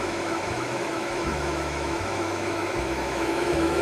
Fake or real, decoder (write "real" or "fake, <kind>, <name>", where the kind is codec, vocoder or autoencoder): fake, autoencoder, DAC-VAE